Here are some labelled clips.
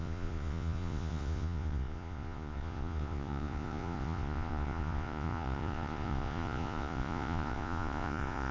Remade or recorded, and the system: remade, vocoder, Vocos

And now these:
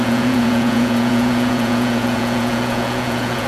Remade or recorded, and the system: remade, vocoder, Vocos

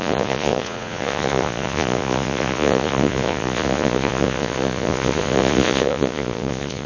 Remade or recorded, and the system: remade, vocoder, Vocos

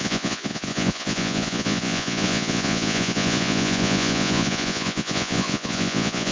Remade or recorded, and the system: remade, vocoder, Vocos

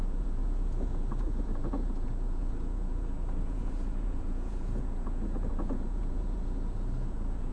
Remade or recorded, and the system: remade, vocoder, Vocos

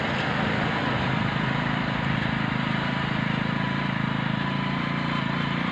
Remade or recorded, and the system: recorded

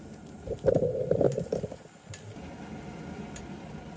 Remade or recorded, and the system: recorded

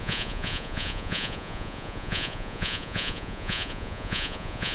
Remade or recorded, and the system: remade, vocoder, Vocos